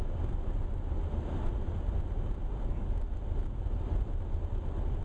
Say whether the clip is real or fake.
real